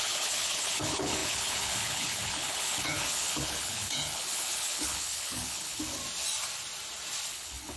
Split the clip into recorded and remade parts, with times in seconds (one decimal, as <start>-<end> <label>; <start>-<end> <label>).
0.0-6.0 remade; 6.0-7.3 recorded; 7.3-7.8 remade